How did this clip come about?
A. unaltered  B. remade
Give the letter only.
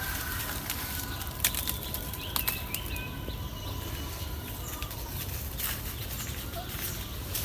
A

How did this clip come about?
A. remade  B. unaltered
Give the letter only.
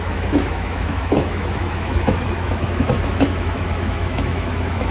A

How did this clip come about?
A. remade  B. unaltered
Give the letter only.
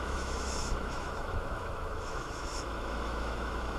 A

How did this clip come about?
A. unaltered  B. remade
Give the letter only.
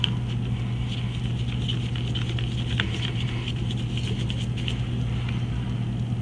A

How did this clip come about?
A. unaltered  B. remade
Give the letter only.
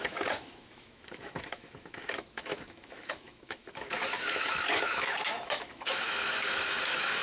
B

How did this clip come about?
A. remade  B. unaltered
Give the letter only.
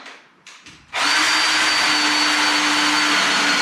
B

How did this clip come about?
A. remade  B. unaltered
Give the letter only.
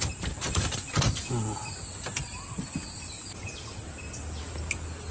B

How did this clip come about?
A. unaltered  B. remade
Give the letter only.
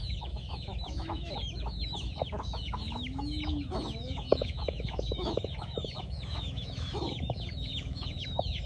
B